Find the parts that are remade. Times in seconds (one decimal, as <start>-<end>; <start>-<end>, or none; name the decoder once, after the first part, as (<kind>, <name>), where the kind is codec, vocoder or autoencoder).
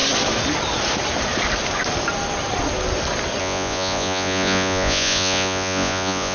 3.4-6.3 (vocoder, Vocos)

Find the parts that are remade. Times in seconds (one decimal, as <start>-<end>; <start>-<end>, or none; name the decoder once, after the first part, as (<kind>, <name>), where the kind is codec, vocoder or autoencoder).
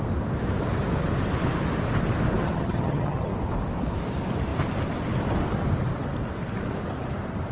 2.4-3.3 (vocoder, HiFi-GAN)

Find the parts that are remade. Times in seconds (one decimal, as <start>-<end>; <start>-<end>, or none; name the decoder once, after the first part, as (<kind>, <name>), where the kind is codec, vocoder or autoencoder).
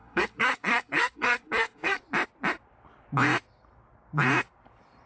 0.0-2.0 (codec, SNAC)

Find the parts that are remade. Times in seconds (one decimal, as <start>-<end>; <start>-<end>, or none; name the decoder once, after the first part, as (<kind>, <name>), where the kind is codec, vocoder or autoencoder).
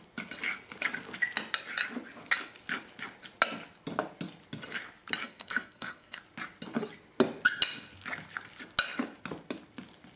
5.2-6.2 (codec, SNAC)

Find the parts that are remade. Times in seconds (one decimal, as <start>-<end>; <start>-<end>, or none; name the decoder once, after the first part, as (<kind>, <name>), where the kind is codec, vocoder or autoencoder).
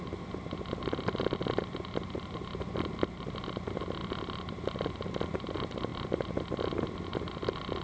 none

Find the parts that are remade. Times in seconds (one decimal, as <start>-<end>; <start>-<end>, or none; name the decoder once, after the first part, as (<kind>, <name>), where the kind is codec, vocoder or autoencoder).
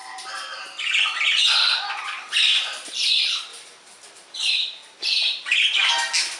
3.5-5.9 (vocoder, BigVGAN v2)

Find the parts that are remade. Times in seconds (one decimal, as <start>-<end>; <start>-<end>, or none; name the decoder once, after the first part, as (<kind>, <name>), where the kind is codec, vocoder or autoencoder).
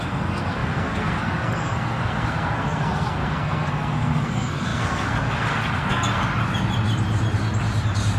0.0-6.3 (codec, SNAC)